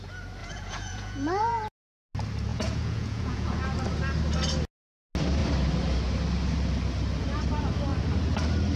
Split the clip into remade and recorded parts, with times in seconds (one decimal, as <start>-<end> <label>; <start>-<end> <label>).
0.0-0.4 recorded; 0.4-1.7 remade; 1.7-2.5 recorded; 2.5-3.6 remade; 3.6-8.8 recorded